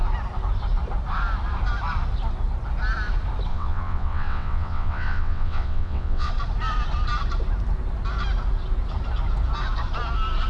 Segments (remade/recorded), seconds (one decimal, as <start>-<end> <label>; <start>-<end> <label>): 0.0-3.5 recorded; 3.5-6.3 remade; 6.3-10.5 recorded